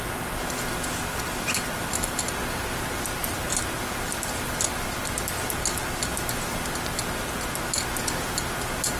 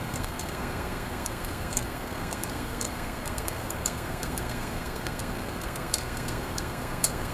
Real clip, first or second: first